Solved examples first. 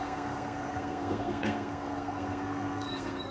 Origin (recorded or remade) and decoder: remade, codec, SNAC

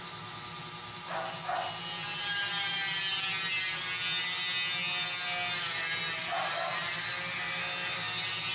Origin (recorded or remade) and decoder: recorded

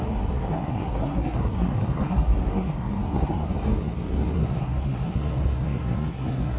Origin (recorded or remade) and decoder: remade, codec, SNAC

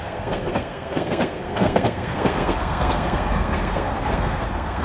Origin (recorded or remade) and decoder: remade, codec, SNAC